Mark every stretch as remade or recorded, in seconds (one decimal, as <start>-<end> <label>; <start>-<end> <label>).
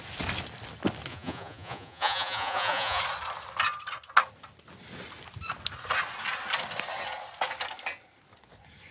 0.0-1.1 recorded; 1.1-3.0 remade; 3.0-8.9 recorded